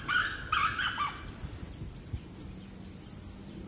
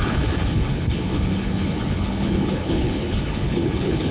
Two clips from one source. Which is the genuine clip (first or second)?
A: first